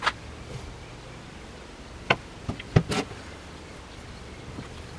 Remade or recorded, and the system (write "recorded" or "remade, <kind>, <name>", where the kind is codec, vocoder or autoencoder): recorded